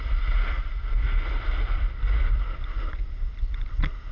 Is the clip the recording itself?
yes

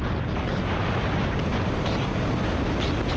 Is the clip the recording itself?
yes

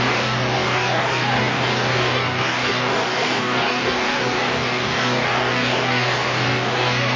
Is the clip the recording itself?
no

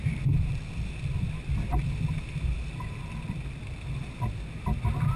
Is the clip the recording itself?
yes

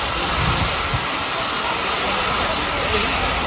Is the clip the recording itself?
yes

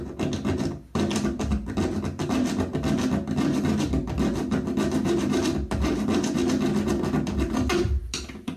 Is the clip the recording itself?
yes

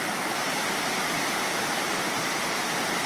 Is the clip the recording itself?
yes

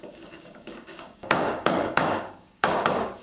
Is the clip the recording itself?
no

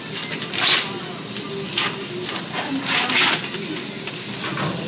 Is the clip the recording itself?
yes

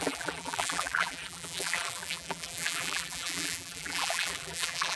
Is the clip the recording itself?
no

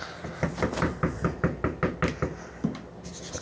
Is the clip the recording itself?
yes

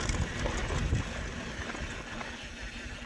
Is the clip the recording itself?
yes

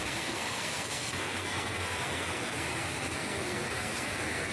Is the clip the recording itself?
no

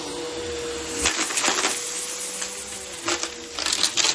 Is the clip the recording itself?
yes